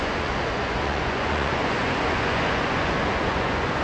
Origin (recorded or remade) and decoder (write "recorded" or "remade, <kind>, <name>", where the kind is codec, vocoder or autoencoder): remade, vocoder, Vocos